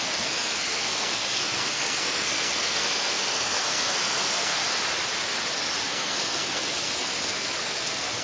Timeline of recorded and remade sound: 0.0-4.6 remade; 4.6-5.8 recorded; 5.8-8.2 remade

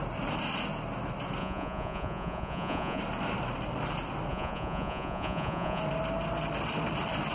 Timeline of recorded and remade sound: 0.0-1.4 recorded; 1.4-3.0 remade; 3.0-4.3 recorded; 4.3-5.8 remade; 5.8-7.3 recorded

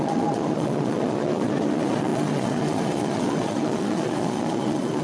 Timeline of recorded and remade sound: 0.0-5.0 remade